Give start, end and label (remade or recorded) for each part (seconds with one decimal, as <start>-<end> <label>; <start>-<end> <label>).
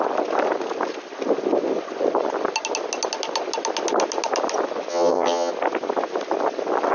0.0-4.9 recorded; 4.9-5.5 remade; 5.5-6.9 recorded